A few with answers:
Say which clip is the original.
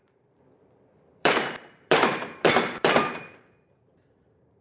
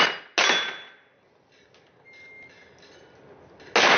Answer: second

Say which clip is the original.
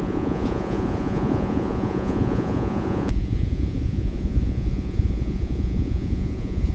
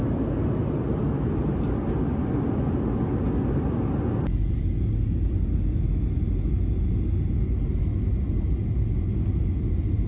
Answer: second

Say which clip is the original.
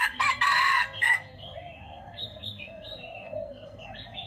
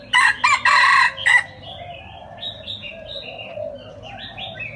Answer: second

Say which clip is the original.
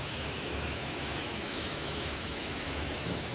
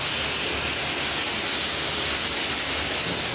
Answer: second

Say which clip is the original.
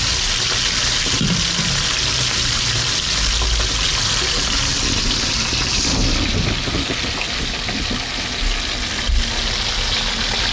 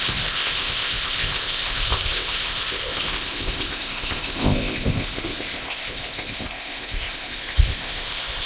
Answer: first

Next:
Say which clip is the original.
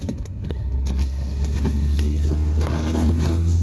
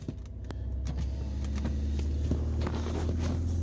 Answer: second